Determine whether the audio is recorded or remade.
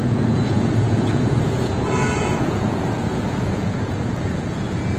remade